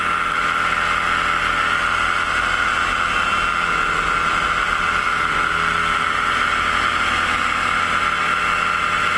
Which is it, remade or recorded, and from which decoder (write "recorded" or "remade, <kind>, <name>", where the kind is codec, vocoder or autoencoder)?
recorded